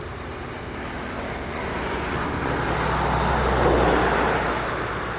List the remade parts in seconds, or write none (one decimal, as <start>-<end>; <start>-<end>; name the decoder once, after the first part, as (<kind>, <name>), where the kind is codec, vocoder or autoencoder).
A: 1.5-2.5 (vocoder, Vocos)